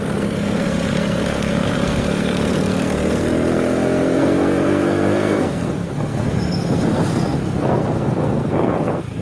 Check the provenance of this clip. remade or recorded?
remade